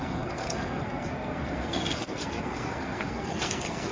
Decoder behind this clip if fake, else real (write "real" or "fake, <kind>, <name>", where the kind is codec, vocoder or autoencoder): fake, codec, SNAC